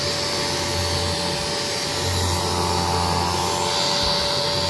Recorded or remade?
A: recorded